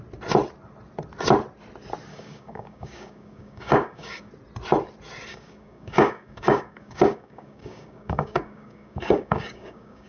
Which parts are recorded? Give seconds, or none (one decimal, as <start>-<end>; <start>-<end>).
0.0-2.1; 4.3-5.3